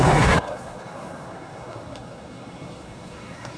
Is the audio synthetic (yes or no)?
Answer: yes